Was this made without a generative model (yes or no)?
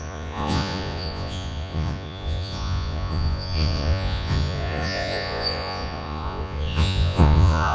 no